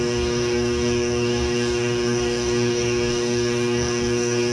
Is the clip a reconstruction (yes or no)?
yes